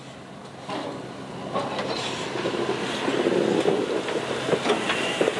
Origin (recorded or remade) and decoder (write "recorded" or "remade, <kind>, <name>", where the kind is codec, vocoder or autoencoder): recorded